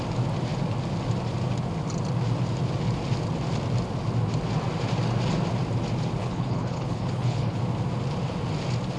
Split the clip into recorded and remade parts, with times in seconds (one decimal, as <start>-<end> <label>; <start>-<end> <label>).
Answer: 0.0-6.2 recorded; 6.2-7.6 remade; 7.6-9.0 recorded